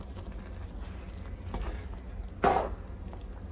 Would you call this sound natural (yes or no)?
yes